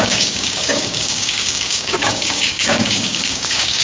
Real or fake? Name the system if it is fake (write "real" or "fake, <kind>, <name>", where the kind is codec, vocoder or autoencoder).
fake, codec, DAC